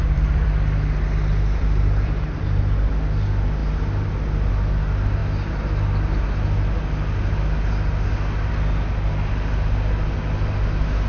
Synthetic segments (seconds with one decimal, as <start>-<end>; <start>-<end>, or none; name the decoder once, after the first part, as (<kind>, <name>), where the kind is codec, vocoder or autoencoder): 0.0-2.9 (vocoder, BigVGAN v2)